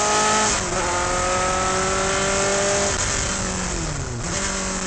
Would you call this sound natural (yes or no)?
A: yes